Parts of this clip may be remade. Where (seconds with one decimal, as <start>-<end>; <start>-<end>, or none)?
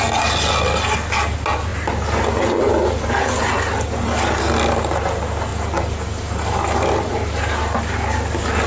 none